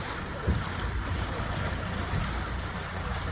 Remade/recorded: recorded